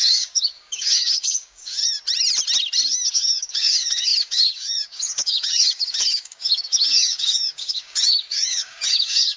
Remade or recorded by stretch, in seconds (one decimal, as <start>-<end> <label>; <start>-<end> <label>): 0.0-1.8 remade; 1.8-3.1 recorded; 3.1-9.4 remade